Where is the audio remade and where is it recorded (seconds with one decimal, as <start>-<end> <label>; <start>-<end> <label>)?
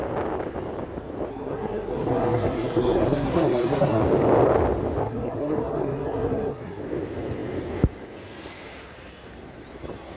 0.0-1.3 recorded; 1.3-4.0 remade; 4.0-5.0 recorded; 5.0-6.8 remade; 6.8-10.2 recorded